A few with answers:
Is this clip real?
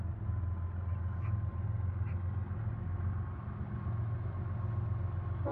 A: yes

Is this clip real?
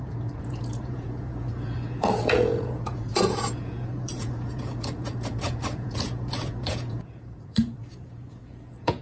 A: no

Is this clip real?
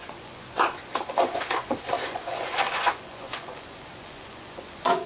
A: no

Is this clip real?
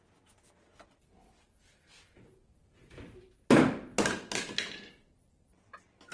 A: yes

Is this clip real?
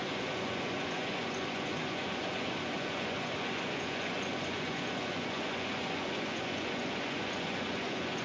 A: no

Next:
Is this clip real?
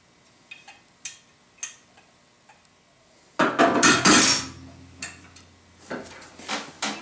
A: yes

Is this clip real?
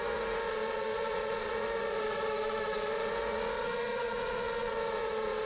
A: no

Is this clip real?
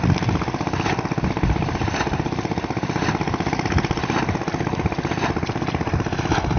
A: yes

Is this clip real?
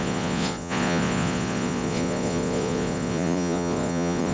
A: no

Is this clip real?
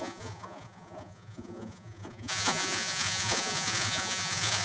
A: no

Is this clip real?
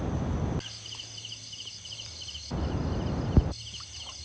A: yes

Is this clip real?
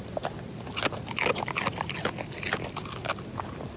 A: yes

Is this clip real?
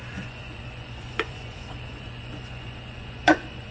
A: no